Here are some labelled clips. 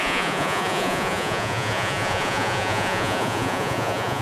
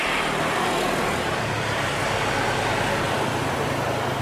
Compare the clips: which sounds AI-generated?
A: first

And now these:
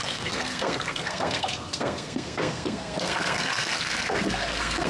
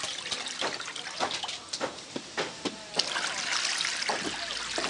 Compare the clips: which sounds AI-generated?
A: first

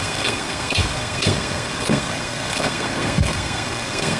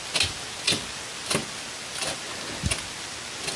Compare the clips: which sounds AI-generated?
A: first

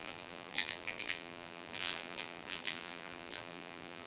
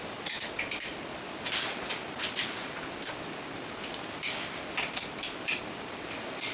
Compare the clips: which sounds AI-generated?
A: first